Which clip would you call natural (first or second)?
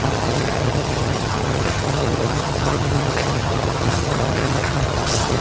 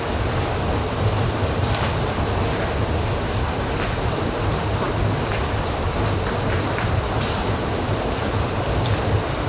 second